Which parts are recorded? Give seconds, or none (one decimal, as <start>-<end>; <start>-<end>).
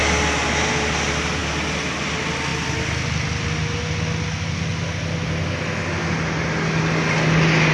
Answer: 0.0-7.7